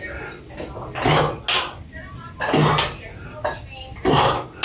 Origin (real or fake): real